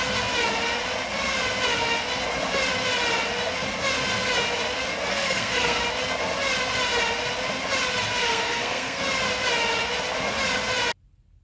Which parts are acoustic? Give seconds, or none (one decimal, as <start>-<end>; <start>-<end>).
0.0-5.1; 5.8-8.2; 9.0-11.4